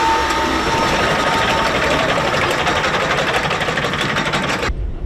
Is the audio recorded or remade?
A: recorded